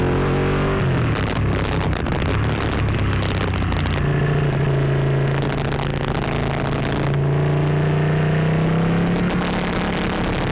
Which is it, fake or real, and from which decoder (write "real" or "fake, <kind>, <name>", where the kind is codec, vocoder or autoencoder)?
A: real